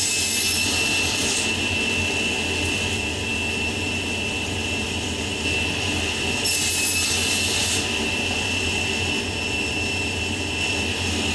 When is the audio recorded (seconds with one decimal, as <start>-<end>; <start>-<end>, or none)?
0.0-11.3

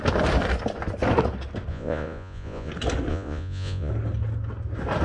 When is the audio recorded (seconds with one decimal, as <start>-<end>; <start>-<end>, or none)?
0.0-1.7; 2.7-3.1; 3.9-5.0

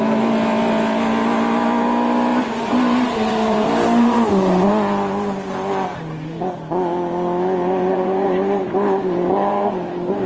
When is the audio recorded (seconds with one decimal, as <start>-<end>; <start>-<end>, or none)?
0.0-2.3; 4.7-7.9; 9.7-10.3

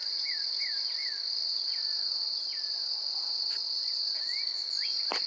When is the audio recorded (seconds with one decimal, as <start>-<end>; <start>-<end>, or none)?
0.5-5.3

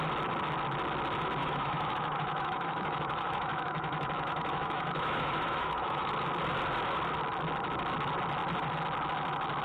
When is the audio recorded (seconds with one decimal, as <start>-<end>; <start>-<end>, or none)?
0.0-1.4; 6.1-9.6

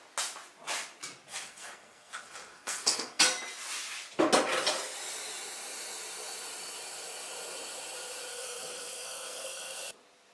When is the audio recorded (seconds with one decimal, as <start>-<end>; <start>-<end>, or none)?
0.0-1.3; 3.2-8.3; 9.8-10.3

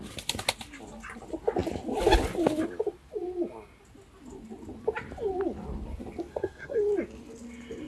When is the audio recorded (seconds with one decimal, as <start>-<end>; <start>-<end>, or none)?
0.0-6.3; 6.8-7.9

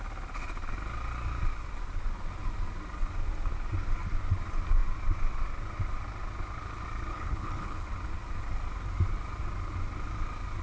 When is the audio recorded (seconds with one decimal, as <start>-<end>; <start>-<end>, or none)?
0.0-7.1; 7.9-10.6